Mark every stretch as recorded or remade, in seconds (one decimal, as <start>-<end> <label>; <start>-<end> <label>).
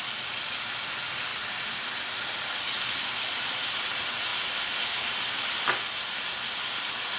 0.0-7.2 recorded